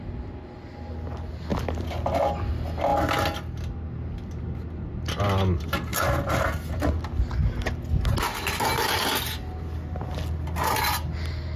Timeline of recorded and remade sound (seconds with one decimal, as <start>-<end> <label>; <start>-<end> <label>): 0.0-11.6 recorded